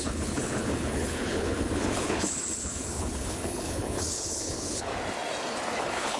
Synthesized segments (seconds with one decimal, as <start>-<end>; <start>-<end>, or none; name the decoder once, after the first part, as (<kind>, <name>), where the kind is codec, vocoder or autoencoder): 0.0-4.9 (codec, HILCodec); 5.8-6.2